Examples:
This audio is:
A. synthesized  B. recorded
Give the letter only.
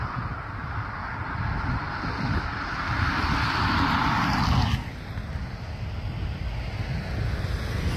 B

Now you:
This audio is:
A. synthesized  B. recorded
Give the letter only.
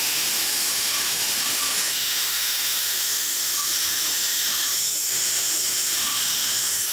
A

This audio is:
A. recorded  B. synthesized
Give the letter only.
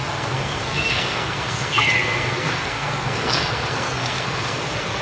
B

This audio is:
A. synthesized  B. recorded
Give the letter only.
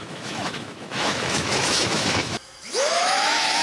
A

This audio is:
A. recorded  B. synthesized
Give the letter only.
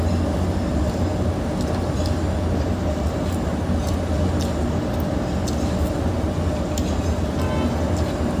A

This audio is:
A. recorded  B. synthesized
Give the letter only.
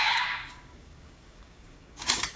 B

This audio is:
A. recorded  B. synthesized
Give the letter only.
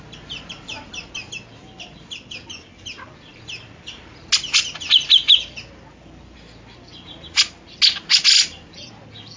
A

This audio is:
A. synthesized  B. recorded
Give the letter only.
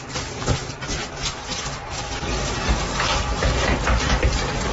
B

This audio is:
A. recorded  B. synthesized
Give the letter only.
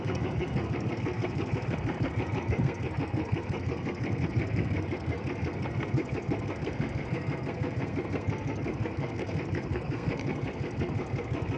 B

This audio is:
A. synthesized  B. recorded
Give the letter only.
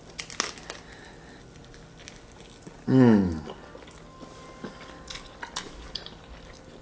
B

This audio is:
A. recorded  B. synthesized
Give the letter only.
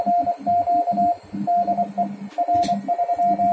A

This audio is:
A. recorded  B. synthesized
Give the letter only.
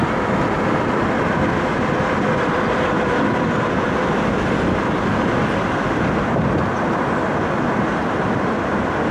A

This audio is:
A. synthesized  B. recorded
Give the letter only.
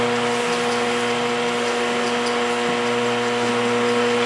B